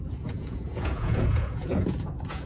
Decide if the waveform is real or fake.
fake